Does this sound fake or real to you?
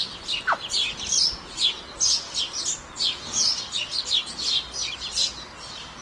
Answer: real